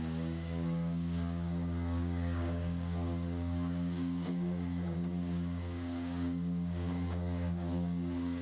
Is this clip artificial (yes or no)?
yes